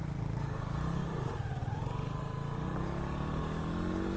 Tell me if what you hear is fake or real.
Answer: real